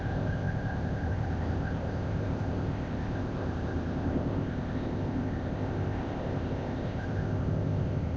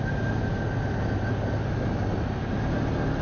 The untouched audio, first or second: second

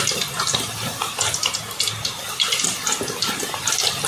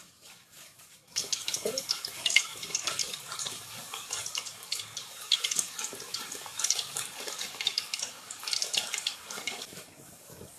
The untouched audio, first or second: first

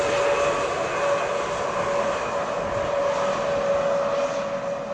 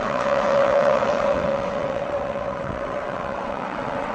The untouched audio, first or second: first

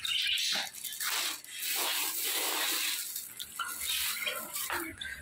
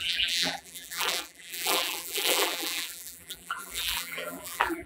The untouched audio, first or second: first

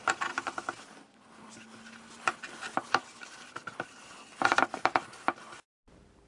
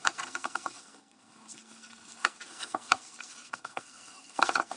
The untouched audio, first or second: first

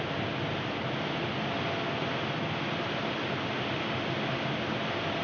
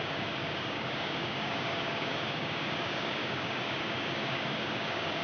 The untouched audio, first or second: first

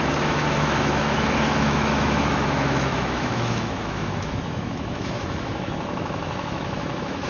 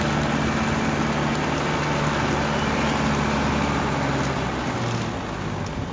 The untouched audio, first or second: second